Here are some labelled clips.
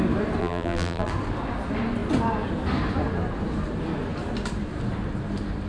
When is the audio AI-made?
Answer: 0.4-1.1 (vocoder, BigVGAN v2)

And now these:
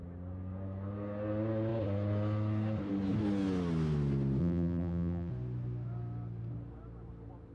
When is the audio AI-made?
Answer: 4.4-5.3 (vocoder, BigVGAN v2)

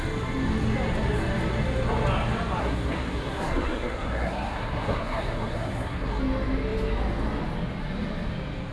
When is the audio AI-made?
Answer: 2.6-6.2 (codec, SNAC)

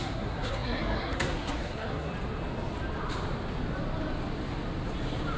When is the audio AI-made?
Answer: 0.0-2.1 (codec, SNAC)

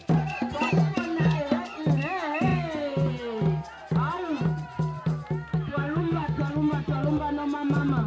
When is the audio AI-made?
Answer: 5.5-6.4 (autoencoder, DAC-VAE)

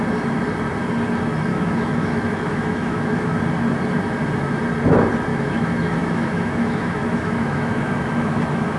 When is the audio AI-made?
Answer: 1.5-3.4 (autoencoder, DAC-VAE); 5.3-8.8

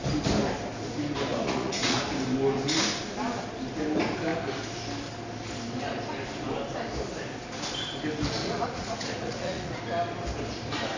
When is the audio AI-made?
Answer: 1.3-2.0 (vocoder, Vocos); 8.4-9.8